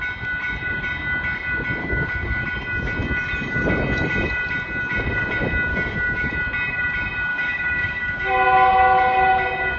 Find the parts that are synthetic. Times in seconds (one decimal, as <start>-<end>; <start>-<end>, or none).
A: 1.8-2.4; 5.7-6.3; 7.3-8.3